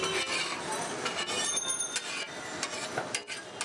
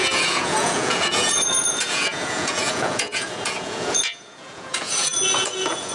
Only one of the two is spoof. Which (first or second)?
second